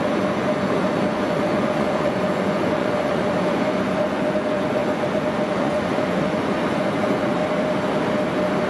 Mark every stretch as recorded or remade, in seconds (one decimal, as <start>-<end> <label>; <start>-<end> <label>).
0.0-7.4 remade; 7.4-8.7 recorded